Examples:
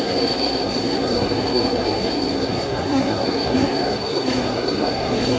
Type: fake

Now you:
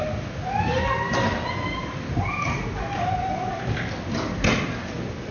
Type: real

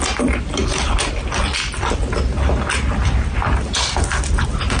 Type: real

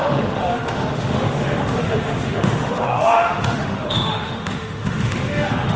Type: fake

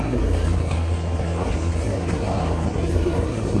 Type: fake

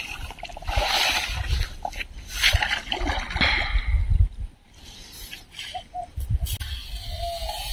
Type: real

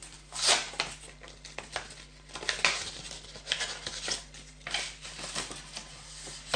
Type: real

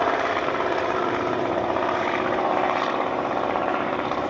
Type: fake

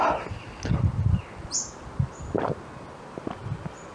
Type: real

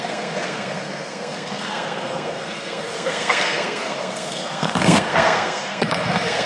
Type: fake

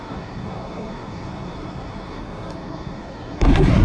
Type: fake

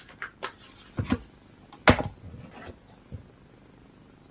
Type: real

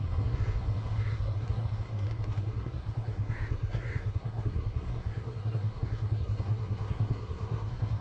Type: fake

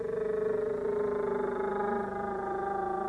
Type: fake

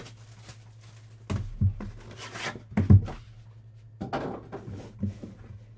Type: real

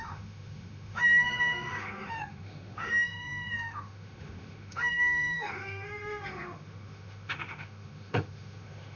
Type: fake